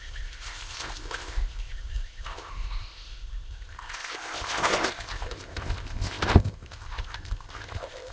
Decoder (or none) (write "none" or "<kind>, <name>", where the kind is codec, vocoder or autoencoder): codec, ZipCodec